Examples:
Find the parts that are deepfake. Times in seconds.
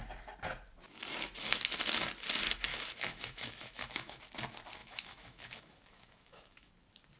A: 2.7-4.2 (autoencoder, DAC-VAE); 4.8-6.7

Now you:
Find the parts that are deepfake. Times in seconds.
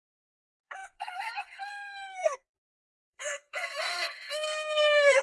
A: 0.0-5.2 (codec, SNAC)